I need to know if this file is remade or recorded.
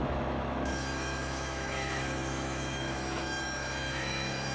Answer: remade